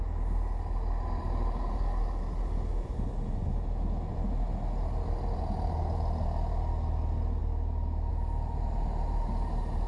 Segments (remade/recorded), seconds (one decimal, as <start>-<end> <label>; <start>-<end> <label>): 0.0-9.9 recorded